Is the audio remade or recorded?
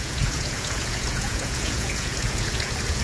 remade